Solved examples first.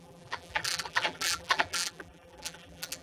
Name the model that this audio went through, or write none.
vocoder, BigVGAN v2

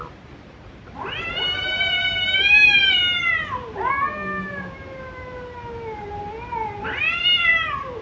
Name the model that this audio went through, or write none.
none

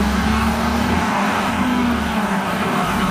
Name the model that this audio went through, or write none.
codec, DAC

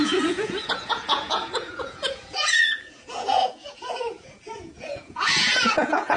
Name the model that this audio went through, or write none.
vocoder, Vocos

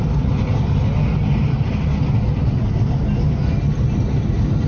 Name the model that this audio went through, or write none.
none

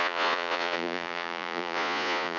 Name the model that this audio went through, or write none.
vocoder, Vocos